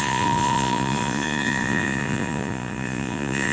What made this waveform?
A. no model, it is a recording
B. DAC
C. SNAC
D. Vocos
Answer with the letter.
D